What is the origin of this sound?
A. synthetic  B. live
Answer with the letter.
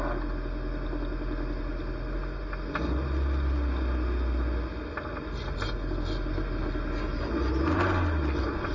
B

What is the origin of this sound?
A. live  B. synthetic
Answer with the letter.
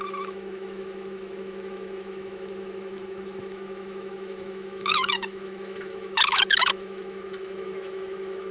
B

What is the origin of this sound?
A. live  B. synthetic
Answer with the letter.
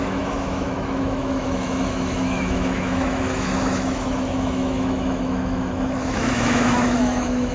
B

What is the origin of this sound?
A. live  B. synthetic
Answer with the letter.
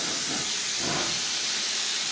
A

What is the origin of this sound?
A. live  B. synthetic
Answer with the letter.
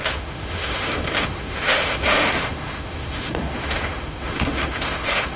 B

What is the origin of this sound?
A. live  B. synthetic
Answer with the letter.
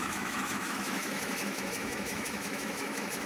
B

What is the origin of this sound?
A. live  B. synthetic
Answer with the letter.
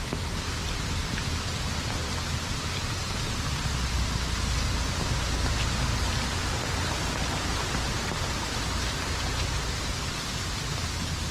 A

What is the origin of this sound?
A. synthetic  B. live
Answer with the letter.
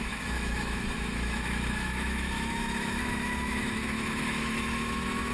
A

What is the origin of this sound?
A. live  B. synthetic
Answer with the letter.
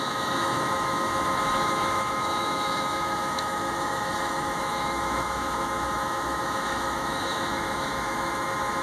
B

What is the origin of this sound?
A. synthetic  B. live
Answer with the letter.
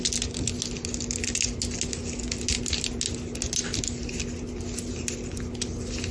B